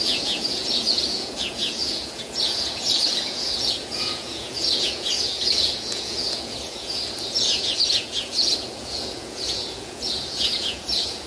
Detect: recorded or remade remade